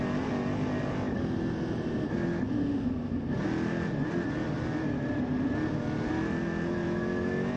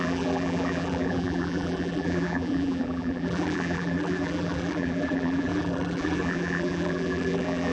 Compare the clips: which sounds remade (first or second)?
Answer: second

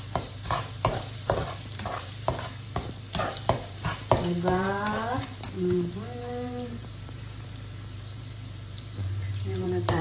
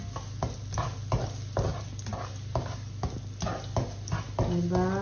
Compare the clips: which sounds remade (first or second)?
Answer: first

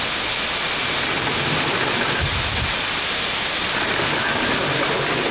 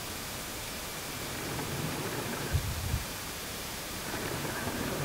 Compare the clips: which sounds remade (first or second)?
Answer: second